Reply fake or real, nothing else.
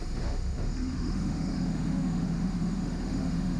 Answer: fake